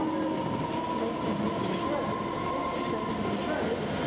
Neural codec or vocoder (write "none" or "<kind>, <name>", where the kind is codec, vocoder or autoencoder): none